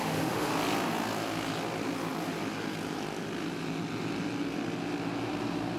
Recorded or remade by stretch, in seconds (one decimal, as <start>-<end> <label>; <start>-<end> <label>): 0.0-0.5 remade; 0.5-5.8 recorded